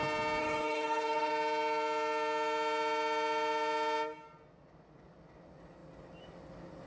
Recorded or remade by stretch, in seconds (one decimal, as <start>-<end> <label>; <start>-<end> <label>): 0.0-0.4 recorded; 0.4-1.3 remade; 1.3-6.9 recorded